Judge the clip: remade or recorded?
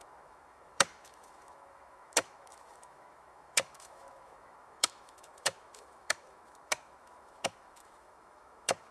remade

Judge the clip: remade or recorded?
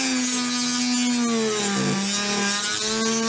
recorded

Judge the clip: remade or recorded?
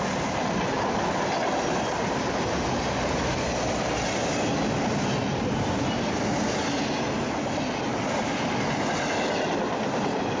recorded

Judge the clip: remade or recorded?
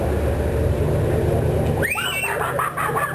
recorded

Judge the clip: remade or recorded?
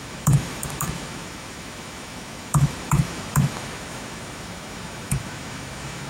remade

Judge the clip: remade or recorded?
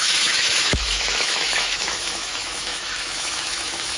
remade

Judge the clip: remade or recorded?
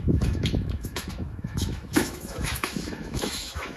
remade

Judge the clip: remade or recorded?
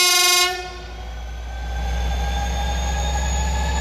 recorded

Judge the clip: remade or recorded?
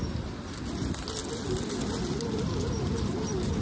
recorded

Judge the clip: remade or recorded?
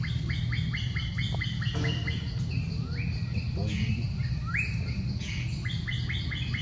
recorded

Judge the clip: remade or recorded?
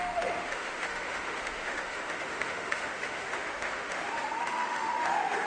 remade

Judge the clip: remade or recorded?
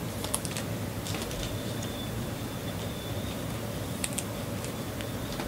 recorded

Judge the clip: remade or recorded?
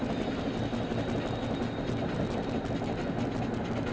recorded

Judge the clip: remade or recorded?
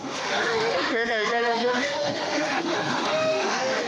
remade